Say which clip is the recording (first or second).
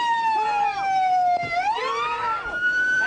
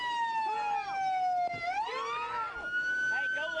second